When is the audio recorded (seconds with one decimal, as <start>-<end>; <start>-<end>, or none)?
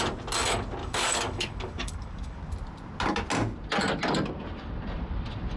0.0-0.8; 2.4-5.6